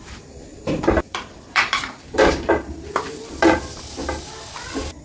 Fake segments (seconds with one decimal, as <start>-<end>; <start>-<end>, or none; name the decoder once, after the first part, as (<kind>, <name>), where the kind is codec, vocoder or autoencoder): 0.5-3.5 (vocoder, BigVGAN v2)